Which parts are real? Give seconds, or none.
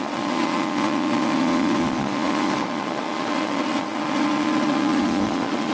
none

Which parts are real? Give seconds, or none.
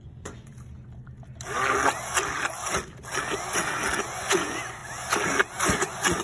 0.5-4.2; 4.8-5.6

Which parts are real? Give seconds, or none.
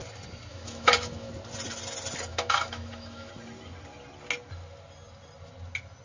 0.0-0.5; 1.3-2.3; 3.3-6.0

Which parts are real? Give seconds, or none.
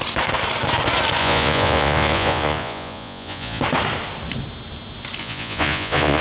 0.0-1.2; 3.6-5.2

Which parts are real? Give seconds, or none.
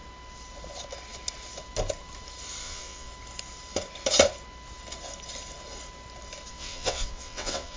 0.0-2.6; 3.1-6.5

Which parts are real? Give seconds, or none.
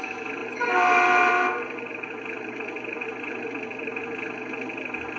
0.0-0.4; 3.5-5.2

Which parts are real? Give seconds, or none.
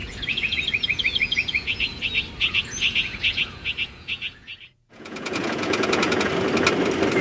2.0-2.4; 6.3-7.2